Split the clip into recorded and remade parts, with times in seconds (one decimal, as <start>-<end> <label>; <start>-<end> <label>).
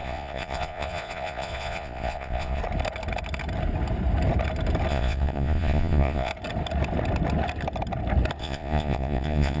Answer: 0.0-2.6 remade; 2.6-4.9 recorded; 4.9-6.3 remade; 6.3-8.4 recorded; 8.4-9.6 remade